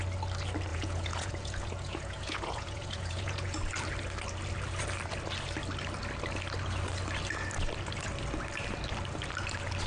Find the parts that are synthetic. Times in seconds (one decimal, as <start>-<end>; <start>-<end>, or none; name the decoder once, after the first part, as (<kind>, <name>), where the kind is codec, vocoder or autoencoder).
0.7-3.6 (vocoder, Vocos)